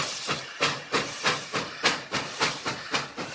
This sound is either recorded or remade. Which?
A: recorded